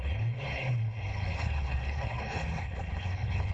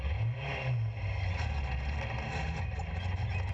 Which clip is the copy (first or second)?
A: first